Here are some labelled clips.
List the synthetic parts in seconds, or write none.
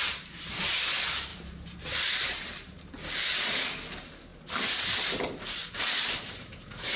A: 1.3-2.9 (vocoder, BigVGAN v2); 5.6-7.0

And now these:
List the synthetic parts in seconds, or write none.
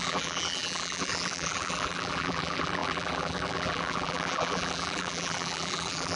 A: 0.0-6.2 (vocoder, BigVGAN v2)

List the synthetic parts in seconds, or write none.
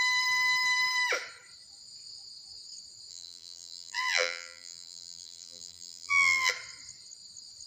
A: 3.1-6.5 (vocoder, BigVGAN v2)